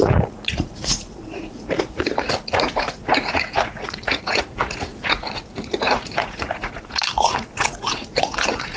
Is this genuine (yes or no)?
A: no